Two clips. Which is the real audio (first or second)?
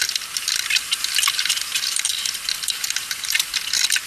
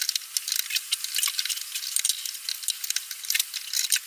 second